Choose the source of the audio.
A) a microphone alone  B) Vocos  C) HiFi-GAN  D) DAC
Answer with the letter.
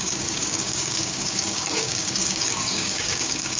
D